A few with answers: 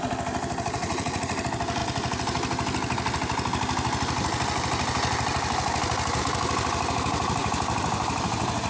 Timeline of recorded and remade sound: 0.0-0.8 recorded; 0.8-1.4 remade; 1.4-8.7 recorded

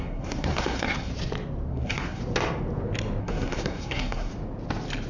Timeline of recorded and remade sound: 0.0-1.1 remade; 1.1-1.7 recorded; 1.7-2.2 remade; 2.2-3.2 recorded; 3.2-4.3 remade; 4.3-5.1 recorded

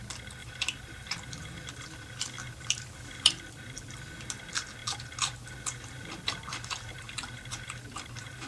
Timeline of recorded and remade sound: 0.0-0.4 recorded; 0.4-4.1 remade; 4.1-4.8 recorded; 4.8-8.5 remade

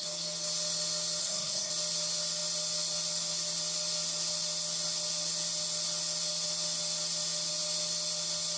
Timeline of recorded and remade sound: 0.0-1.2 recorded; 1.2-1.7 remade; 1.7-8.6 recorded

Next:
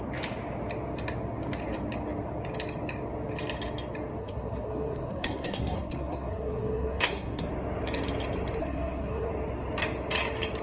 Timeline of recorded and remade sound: 0.0-4.2 recorded; 4.2-7.5 remade; 7.5-8.6 recorded; 8.6-9.3 remade; 9.3-10.6 recorded